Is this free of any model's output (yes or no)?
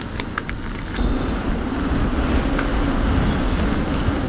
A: yes